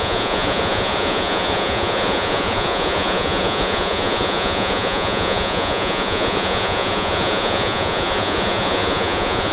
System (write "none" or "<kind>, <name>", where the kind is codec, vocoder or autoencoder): vocoder, Vocos